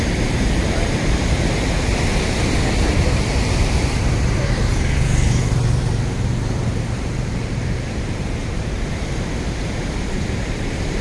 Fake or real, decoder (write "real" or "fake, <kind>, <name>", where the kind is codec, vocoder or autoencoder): fake, vocoder, BigVGAN v2